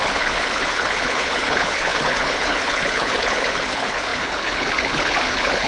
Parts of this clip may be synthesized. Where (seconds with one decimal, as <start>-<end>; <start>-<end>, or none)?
0.0-5.7